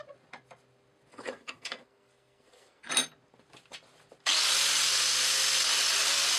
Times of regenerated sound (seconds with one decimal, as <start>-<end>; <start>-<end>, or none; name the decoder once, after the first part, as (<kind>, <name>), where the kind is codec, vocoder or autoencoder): 1.1-2.9 (codec, SNAC)